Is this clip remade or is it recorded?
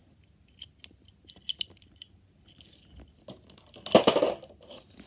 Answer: recorded